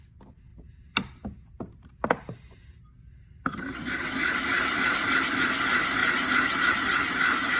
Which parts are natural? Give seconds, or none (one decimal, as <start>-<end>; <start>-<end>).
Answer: 0.0-0.5; 3.1-4.2; 5.2-7.6